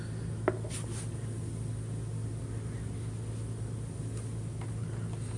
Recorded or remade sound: recorded